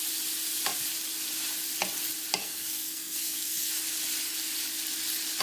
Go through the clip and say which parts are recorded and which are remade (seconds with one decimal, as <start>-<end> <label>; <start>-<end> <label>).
0.0-2.4 recorded; 2.4-3.7 remade; 3.7-5.4 recorded